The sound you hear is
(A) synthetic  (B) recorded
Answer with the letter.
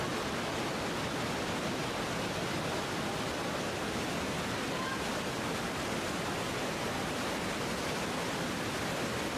B